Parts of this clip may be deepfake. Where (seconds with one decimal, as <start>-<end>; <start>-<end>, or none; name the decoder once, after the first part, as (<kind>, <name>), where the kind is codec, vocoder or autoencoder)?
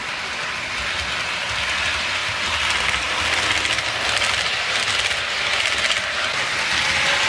none